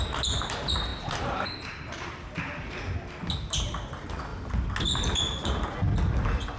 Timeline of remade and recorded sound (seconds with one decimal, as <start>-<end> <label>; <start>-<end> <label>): 0.0-6.6 recorded